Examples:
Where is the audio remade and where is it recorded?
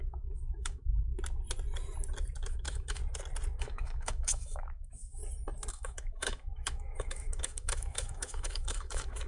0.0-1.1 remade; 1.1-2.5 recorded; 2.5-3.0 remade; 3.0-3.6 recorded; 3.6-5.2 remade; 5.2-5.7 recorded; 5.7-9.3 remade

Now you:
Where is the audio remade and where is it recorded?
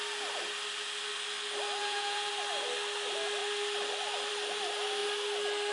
0.0-1.8 recorded; 1.8-2.3 remade; 2.3-5.7 recorded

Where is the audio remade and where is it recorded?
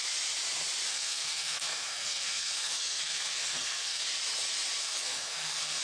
0.0-0.9 recorded; 0.9-4.0 remade; 4.0-4.8 recorded; 4.8-5.8 remade